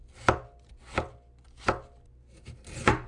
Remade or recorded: recorded